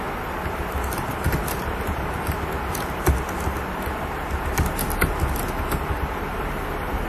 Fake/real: real